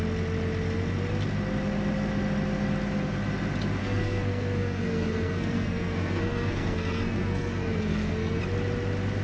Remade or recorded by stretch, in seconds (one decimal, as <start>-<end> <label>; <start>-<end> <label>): 0.0-3.8 recorded; 3.8-8.4 remade; 8.4-9.2 recorded